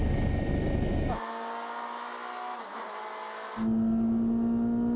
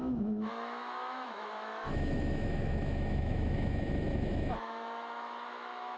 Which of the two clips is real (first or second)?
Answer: first